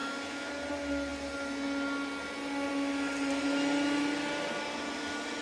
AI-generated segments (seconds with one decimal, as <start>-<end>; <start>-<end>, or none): 0.0-0.5